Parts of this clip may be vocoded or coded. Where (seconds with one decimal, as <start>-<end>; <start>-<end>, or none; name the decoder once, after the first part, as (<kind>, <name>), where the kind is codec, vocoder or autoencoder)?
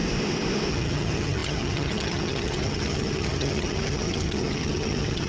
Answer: 0.7-5.3 (vocoder, HiFi-GAN)